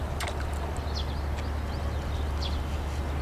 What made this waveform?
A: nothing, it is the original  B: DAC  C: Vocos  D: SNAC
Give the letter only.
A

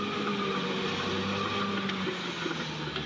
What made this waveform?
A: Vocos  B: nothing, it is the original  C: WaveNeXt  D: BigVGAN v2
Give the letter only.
B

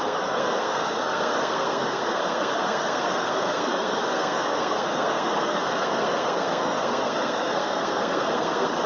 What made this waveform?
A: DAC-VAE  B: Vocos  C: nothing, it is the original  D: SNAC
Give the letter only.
D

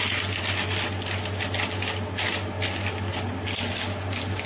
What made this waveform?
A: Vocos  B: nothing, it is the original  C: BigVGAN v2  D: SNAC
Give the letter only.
B